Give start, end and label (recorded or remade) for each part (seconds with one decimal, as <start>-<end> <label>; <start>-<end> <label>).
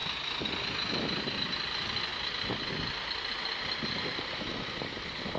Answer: 0.0-5.4 recorded